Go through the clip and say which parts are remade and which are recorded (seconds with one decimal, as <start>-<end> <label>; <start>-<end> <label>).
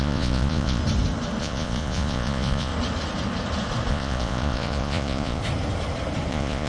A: 0.0-0.8 remade; 0.8-1.4 recorded; 1.4-2.7 remade; 2.7-3.9 recorded; 3.9-5.4 remade; 5.4-6.3 recorded; 6.3-6.7 remade